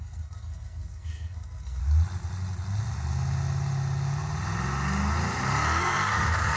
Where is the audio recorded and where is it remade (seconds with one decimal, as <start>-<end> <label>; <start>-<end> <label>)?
0.0-1.8 remade; 1.8-5.8 recorded; 5.8-6.6 remade